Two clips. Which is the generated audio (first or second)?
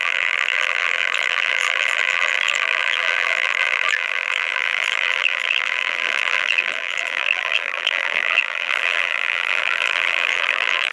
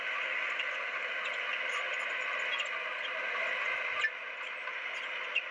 first